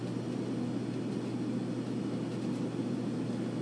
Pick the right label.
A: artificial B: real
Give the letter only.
B